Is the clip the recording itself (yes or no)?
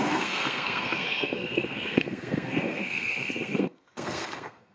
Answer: no